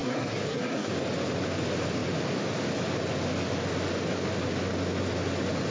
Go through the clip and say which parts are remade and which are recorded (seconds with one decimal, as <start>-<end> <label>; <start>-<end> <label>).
0.0-0.9 remade; 0.9-5.7 recorded